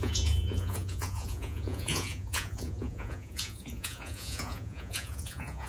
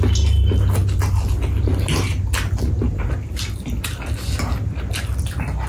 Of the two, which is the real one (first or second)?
second